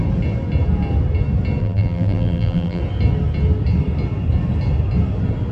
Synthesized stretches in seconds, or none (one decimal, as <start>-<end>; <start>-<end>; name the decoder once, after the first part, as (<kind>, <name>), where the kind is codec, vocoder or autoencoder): 1.6-2.8 (vocoder, BigVGAN v2)